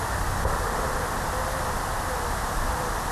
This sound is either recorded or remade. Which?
recorded